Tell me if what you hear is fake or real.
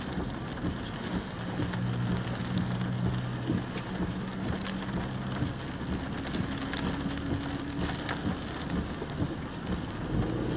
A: real